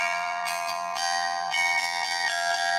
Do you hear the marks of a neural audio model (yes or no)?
yes